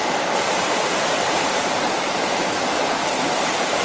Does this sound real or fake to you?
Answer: fake